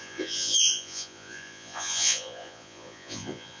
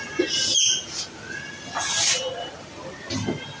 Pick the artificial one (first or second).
first